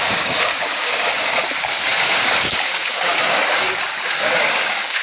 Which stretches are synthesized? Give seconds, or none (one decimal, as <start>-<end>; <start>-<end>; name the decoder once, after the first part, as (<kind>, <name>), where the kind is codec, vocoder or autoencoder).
0.0-5.0 (codec, DAC)